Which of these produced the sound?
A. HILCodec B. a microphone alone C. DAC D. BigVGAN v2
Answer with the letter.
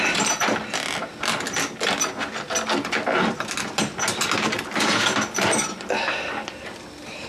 B